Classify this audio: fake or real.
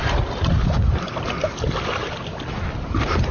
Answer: real